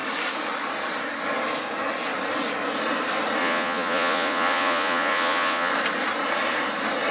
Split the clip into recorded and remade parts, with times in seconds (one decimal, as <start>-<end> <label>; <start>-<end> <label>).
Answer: 0.0-3.4 recorded; 3.4-5.7 remade; 5.7-7.1 recorded